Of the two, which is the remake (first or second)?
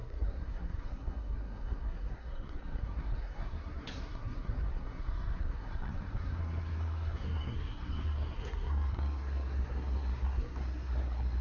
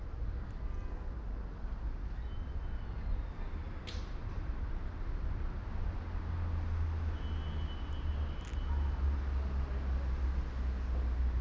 first